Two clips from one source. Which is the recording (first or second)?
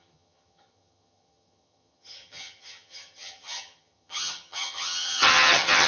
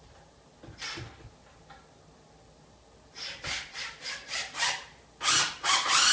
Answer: second